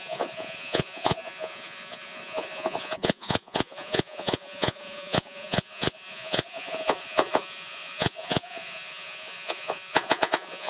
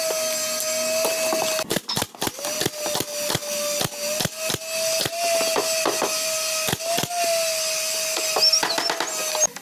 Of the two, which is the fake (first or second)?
first